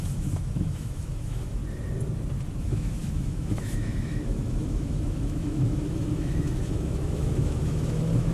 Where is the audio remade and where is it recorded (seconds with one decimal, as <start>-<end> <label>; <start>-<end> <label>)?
0.0-1.6 remade; 1.6-2.6 recorded; 2.6-8.3 remade